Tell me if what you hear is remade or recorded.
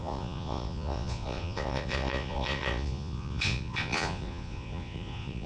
remade